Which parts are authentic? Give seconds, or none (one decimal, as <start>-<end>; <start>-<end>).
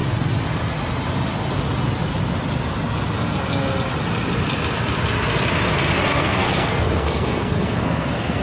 0.0-6.1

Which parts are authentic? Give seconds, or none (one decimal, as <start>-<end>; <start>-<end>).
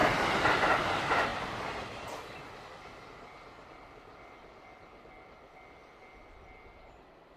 0.0-7.4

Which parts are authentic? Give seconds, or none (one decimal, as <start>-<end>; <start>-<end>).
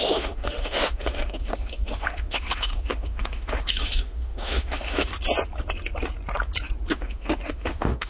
5.1-6.9